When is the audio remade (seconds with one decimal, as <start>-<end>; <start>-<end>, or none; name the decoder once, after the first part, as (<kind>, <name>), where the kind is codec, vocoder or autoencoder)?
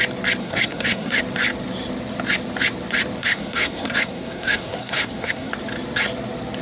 0.4-1.2 (codec, SNAC); 3.2-5.5